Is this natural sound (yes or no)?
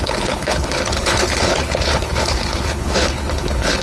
no